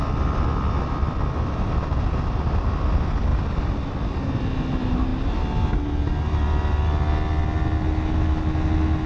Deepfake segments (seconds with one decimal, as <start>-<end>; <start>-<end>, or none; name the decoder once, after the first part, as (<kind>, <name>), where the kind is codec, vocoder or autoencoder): none